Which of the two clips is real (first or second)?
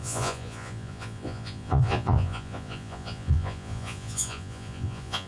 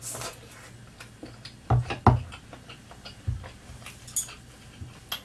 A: second